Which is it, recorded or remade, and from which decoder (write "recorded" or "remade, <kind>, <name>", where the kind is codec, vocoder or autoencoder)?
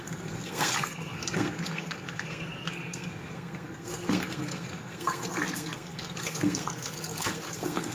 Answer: remade, codec, SNAC